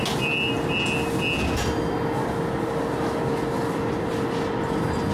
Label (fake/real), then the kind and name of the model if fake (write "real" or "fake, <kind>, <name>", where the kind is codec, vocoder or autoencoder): real